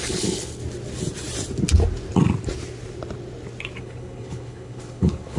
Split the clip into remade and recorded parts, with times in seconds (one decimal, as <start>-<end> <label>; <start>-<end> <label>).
0.0-0.6 remade; 0.6-3.8 recorded; 3.8-5.4 remade